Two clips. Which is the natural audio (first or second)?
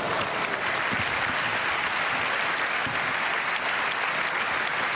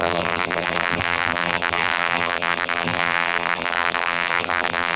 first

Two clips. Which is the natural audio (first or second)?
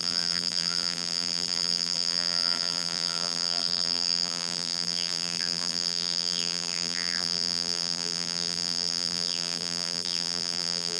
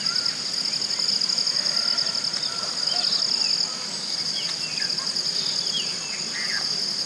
second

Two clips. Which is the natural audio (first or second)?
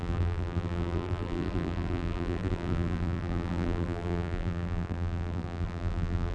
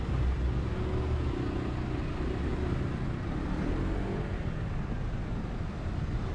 second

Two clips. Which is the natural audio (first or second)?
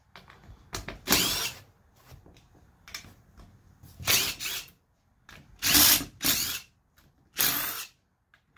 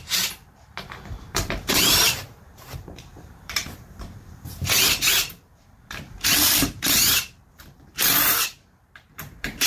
first